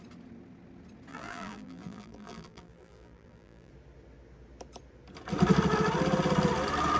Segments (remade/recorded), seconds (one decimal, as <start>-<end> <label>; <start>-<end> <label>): 0.0-1.1 recorded; 1.1-3.7 remade; 3.7-7.0 recorded